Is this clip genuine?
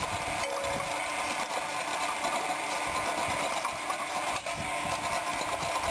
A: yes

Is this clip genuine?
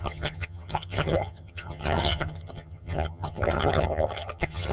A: no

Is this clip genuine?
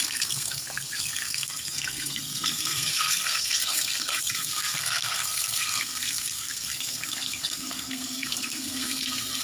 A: no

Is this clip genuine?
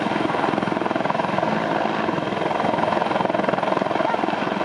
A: yes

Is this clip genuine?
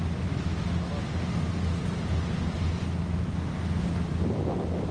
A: yes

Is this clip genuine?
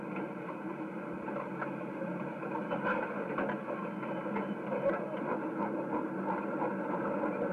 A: yes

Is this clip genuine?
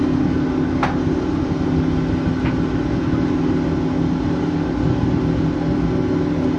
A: yes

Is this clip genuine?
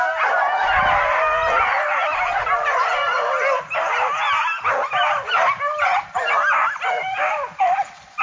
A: yes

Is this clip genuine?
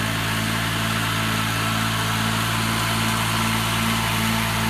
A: yes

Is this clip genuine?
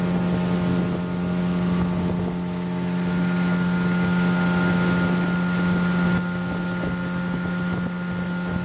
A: yes